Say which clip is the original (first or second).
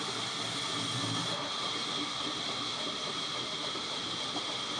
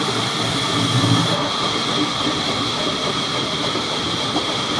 first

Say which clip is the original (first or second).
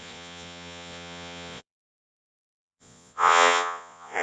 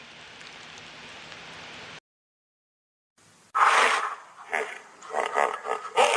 second